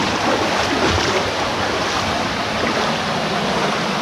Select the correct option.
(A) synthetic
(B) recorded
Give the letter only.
B